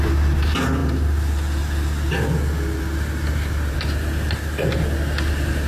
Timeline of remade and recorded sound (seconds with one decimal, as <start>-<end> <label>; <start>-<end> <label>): 0.0-5.7 recorded